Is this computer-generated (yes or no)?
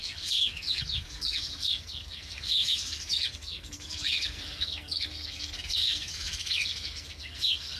yes